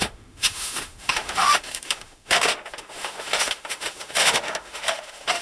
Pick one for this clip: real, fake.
fake